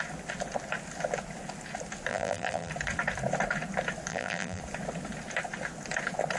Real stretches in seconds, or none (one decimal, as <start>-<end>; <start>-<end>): 0.0-2.1; 2.7-4.1; 4.6-6.4